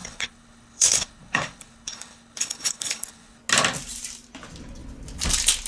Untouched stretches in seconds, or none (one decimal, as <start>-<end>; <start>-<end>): 3.4-5.7